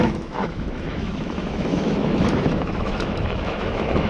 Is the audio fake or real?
fake